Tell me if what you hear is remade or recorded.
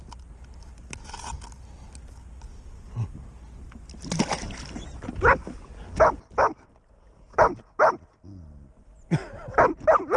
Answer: recorded